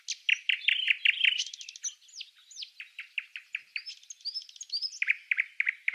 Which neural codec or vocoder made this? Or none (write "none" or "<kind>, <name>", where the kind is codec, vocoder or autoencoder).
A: none